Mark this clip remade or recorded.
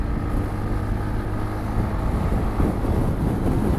recorded